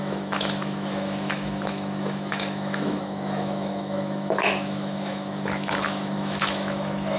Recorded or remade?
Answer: remade